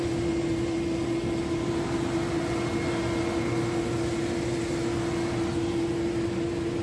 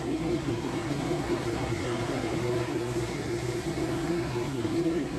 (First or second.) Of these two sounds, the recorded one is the first